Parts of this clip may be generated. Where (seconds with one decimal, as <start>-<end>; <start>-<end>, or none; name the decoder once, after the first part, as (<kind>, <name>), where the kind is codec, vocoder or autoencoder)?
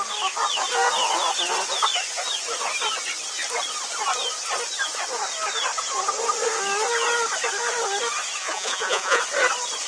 8.4-9.2 (vocoder, Vocos)